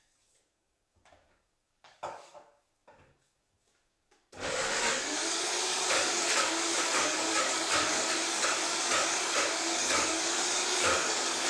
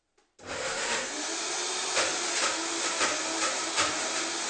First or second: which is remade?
first